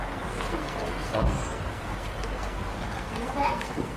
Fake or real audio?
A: fake